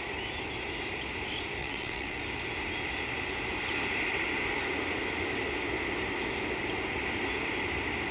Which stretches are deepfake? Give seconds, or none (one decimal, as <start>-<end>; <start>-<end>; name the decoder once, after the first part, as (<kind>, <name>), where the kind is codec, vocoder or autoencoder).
1.6-2.2 (vocoder, WaveNeXt)